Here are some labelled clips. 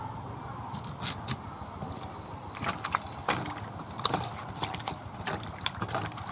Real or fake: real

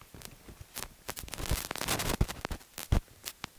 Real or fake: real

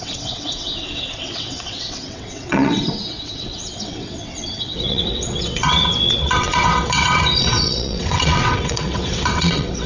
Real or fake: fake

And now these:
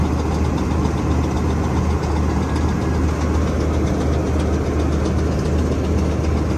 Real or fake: real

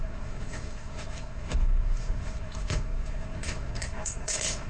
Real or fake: fake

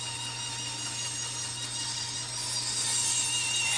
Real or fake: real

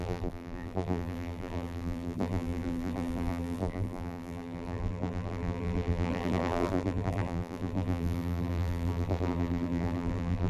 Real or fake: fake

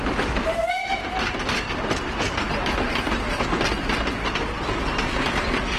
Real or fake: real